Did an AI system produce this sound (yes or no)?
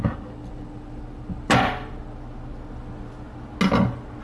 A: no